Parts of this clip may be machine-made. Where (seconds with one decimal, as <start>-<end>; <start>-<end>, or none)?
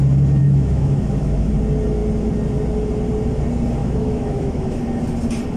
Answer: 0.4-1.5; 3.8-4.8